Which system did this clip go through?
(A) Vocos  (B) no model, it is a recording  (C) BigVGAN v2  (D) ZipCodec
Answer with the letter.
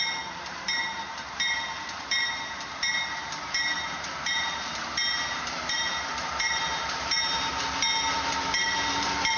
C